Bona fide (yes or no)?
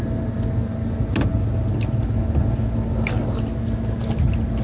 yes